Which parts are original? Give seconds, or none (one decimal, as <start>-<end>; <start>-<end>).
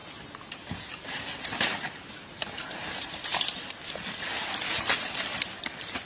3.7-6.1